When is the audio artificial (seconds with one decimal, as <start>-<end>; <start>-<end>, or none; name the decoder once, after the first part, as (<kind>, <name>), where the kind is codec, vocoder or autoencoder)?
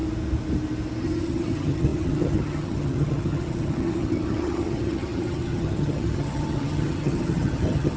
1.0-8.0 (vocoder, HiFi-GAN)